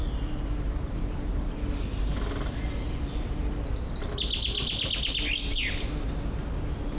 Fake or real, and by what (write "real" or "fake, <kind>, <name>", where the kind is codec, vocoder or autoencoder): real